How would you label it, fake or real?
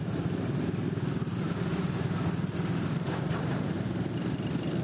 real